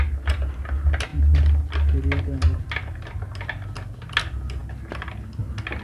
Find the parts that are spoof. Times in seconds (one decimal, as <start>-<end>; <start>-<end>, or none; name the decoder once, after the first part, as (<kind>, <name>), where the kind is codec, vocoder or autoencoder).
none